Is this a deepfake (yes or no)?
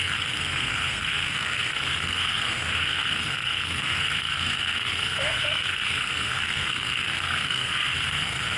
yes